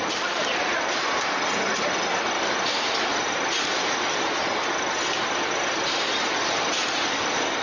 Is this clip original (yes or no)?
yes